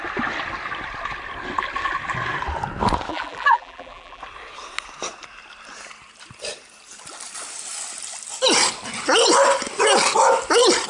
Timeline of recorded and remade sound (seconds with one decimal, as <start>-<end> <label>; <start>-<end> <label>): 0.0-3.1 recorded; 3.1-4.2 remade; 4.2-10.9 recorded